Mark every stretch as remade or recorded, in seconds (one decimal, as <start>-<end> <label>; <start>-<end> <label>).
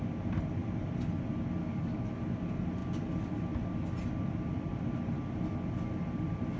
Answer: 0.0-1.6 recorded; 1.6-2.1 remade; 2.1-6.6 recorded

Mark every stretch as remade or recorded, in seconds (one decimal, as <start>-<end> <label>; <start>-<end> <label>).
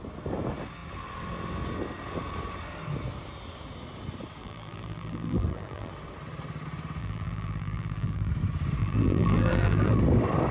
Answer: 0.0-4.4 recorded; 4.4-5.9 remade; 5.9-7.0 recorded; 7.0-8.3 remade; 8.3-8.8 recorded; 8.8-10.0 remade; 10.0-10.5 recorded